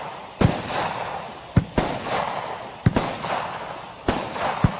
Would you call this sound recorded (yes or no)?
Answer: yes